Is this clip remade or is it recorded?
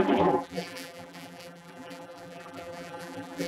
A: remade